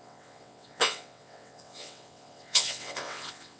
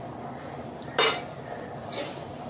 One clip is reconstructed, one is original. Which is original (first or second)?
second